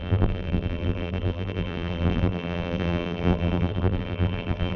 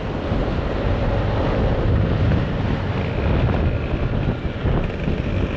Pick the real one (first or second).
second